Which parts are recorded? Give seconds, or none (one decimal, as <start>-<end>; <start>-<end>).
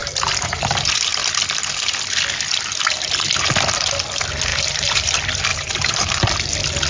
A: 0.7-4.5; 5.1-5.5; 6.2-6.9